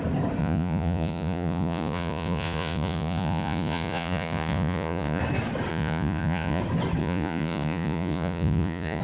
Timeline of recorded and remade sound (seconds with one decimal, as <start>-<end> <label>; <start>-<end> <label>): 0.0-0.4 recorded; 0.4-5.2 remade; 5.2-5.7 recorded; 5.7-6.6 remade; 6.6-7.0 recorded; 7.0-9.0 remade